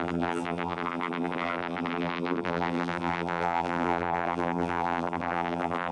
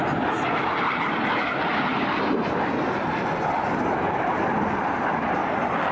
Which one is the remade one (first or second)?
first